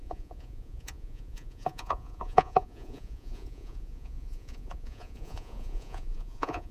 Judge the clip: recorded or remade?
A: remade